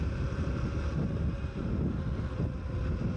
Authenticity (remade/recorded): recorded